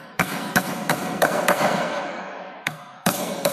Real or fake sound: fake